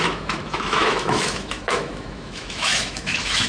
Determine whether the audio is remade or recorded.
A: remade